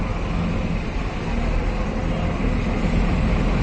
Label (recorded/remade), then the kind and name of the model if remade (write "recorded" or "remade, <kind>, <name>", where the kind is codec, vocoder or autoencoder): recorded